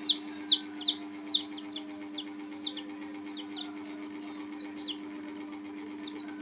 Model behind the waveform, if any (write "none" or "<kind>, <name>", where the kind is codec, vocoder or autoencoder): none